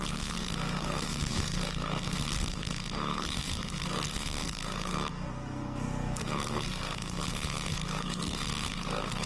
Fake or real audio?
fake